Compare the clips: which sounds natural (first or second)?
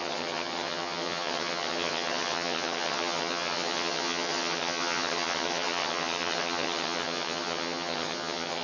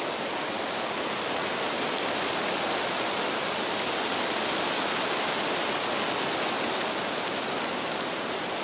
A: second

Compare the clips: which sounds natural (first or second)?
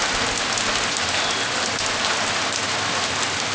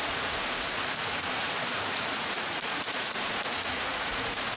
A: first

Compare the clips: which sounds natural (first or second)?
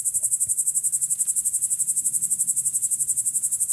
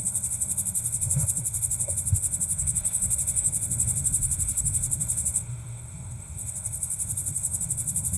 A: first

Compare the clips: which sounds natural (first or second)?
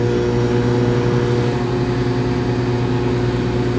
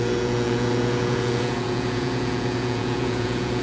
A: first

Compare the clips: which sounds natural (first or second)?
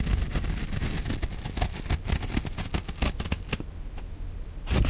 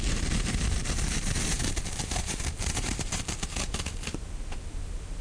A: first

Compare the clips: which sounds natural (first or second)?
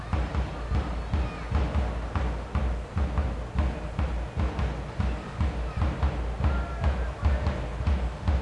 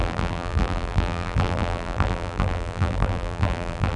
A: first